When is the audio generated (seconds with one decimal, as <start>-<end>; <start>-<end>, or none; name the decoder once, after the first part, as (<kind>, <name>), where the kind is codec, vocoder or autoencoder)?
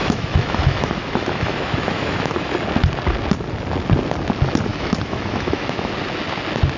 0.0-2.5 (autoencoder, DAC-VAE); 4.7-5.9